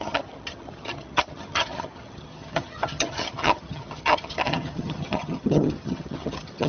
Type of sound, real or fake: fake